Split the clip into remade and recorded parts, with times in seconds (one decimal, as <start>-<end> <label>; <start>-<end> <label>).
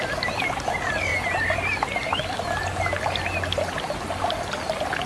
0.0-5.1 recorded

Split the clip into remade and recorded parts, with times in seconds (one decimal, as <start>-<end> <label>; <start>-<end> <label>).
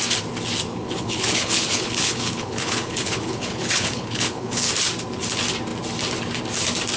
0.0-0.7 recorded; 0.7-4.7 remade; 4.7-7.0 recorded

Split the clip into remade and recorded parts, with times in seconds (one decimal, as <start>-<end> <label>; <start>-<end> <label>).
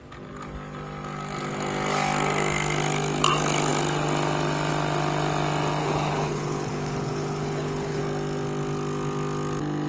0.0-5.8 recorded; 5.8-8.0 remade; 8.0-9.9 recorded